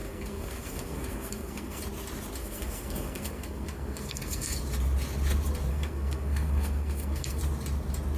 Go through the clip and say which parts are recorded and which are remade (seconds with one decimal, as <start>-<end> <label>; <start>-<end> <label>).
0.0-1.8 remade; 1.8-2.4 recorded; 2.4-4.6 remade; 4.6-5.7 recorded; 5.7-7.4 remade; 7.4-8.2 recorded